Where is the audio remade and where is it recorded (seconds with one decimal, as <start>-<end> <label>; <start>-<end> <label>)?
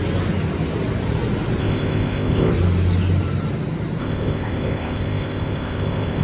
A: 0.0-1.6 recorded; 1.6-2.5 remade; 2.5-4.0 recorded; 4.0-6.2 remade